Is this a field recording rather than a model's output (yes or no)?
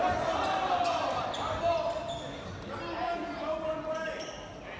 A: yes